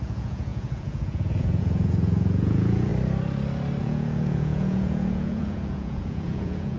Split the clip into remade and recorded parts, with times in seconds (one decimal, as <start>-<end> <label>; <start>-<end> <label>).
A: 0.0-2.9 remade; 2.9-3.8 recorded; 3.8-6.8 remade